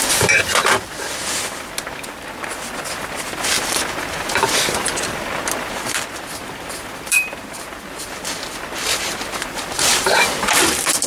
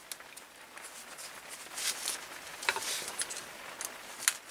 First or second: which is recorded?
second